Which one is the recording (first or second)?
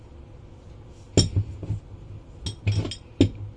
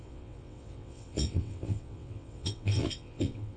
first